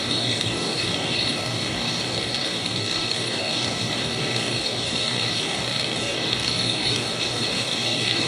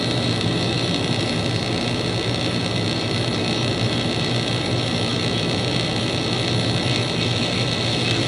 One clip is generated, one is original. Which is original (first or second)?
second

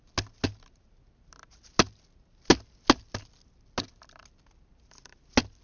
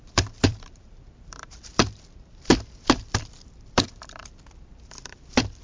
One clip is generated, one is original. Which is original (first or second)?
first